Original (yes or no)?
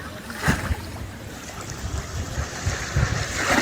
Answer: yes